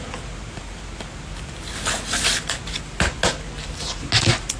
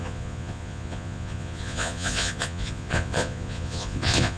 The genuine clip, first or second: first